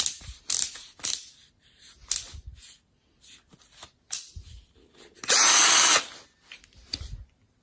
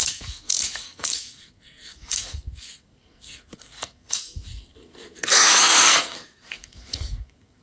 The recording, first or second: first